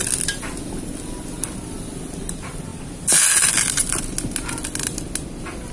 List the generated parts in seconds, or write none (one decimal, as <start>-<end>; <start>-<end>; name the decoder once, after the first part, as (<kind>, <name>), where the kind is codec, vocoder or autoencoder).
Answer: none